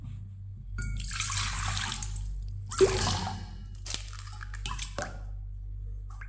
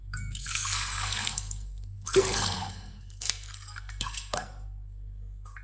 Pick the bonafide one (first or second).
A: first